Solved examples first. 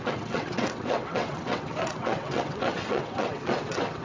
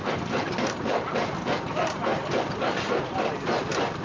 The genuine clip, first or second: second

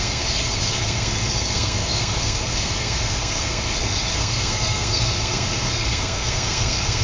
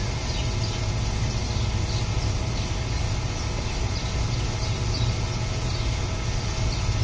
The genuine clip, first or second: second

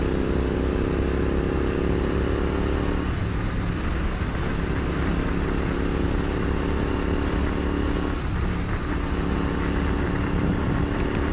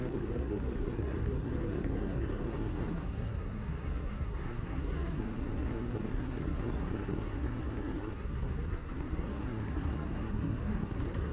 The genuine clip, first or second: first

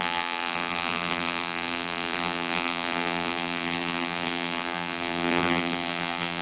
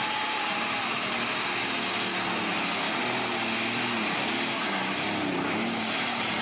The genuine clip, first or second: second